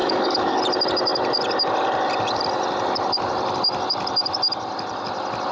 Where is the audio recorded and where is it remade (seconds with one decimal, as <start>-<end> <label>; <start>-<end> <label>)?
0.0-0.6 remade; 0.6-5.5 recorded